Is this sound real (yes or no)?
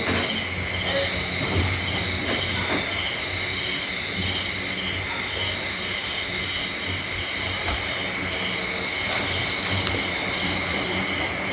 yes